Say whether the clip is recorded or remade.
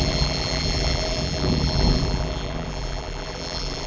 remade